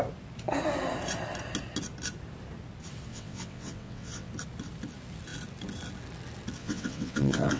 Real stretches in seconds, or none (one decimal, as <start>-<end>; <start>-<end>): 0.0-3.1; 4.3-6.6